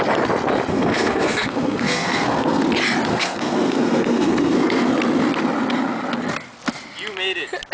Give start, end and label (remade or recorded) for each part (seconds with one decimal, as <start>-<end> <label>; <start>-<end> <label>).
0.0-0.7 recorded; 0.7-2.6 remade; 2.6-3.1 recorded; 3.1-4.9 remade; 4.9-7.7 recorded